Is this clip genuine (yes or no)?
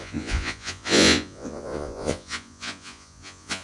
no